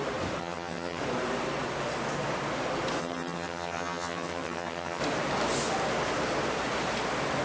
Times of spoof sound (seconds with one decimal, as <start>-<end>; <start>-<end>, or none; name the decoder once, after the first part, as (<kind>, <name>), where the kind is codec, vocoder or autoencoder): 0.4-1.0 (vocoder, HiFi-GAN); 3.0-5.0